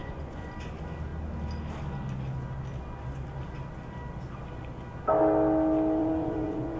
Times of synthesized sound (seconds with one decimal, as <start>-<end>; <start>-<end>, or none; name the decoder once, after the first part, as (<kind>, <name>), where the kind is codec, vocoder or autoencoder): 0.0-0.5 (vocoder, Vocos); 6.0-6.8